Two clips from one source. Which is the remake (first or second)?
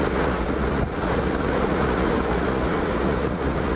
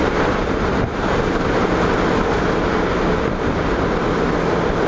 first